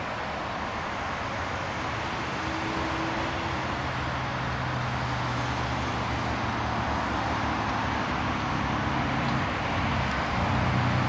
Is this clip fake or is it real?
real